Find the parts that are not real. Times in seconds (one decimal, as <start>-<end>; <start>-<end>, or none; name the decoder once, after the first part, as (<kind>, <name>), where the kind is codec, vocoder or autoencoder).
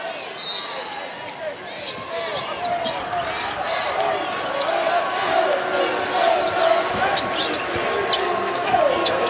8.2-8.8 (codec, SNAC)